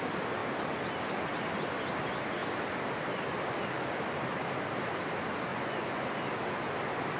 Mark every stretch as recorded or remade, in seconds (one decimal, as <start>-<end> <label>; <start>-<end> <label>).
0.0-5.5 recorded; 5.5-6.0 remade; 6.0-7.2 recorded

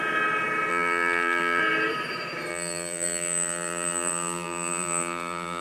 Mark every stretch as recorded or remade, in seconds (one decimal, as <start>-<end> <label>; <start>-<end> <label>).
0.0-0.7 recorded; 0.7-1.6 remade; 1.6-2.5 recorded; 2.5-5.6 remade